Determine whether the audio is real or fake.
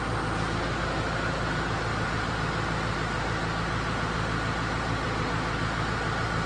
real